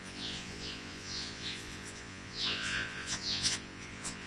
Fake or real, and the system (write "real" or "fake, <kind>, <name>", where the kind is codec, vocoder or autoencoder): fake, vocoder, Vocos